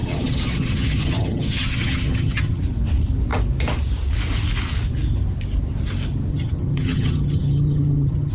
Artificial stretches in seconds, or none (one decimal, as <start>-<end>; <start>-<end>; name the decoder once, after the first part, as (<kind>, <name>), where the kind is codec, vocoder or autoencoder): 0.0-2.6 (vocoder, HiFi-GAN); 6.3-8.3